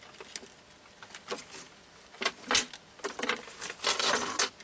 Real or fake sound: real